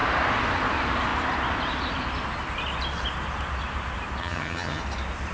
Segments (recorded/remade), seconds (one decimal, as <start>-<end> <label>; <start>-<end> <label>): 0.0-4.2 recorded; 4.2-4.8 remade; 4.8-5.3 recorded